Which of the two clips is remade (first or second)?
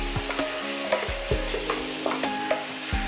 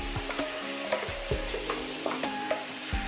second